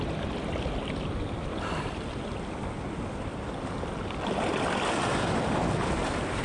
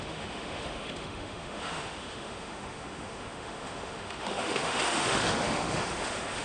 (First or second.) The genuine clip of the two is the first